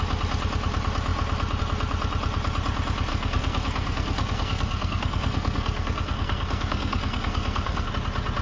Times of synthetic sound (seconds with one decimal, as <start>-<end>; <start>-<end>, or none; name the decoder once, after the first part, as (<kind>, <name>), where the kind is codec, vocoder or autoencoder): 3.1-7.9 (codec, SNAC)